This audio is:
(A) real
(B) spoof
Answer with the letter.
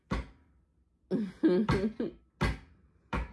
A